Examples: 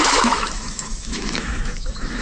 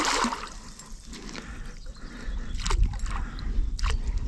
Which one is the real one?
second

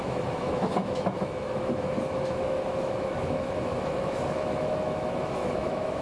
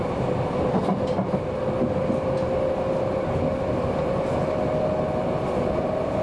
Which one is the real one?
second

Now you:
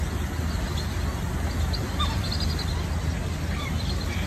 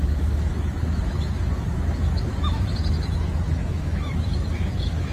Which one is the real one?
first